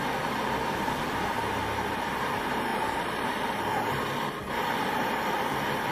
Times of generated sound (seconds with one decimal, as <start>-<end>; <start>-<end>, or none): 1.6-2.1; 2.7-3.6